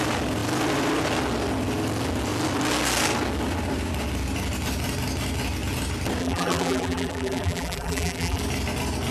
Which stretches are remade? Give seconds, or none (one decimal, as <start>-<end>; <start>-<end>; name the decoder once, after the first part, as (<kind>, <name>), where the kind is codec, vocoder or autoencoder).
6.2-8.4 (vocoder, BigVGAN v2)